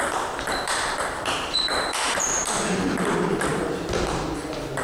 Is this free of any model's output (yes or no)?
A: no